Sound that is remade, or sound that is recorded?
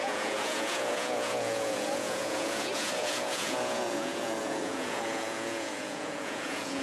remade